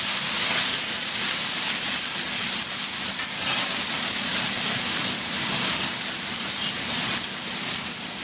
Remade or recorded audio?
recorded